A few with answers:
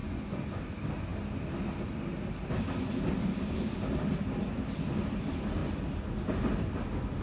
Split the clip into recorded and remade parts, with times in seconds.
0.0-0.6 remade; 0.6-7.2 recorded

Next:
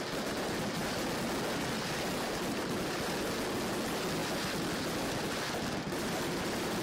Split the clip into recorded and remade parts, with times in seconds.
0.0-6.8 recorded

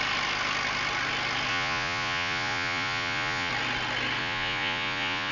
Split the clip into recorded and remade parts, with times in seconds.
0.0-1.5 recorded; 1.5-3.5 remade; 3.5-4.2 recorded; 4.2-5.3 remade